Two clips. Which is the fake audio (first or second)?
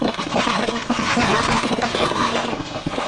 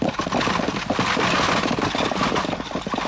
first